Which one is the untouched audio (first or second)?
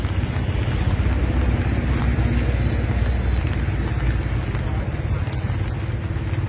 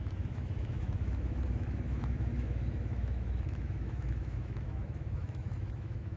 first